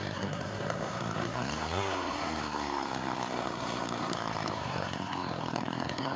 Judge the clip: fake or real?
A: fake